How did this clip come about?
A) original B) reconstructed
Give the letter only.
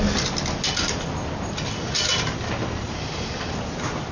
A